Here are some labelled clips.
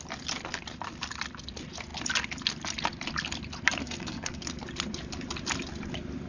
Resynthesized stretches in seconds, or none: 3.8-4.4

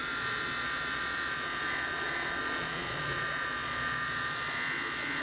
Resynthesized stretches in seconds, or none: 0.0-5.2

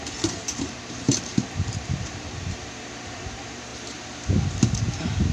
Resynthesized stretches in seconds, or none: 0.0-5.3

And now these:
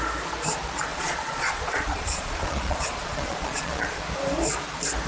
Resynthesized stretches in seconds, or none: 0.9-4.0

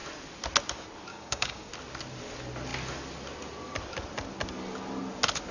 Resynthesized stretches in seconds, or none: 1.1-1.7